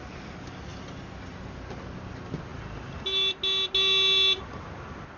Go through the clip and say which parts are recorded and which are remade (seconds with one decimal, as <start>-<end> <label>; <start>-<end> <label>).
0.0-5.2 recorded